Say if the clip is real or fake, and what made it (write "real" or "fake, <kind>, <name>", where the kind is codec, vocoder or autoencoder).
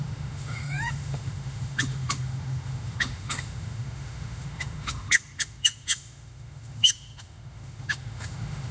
fake, autoencoder, DAC-VAE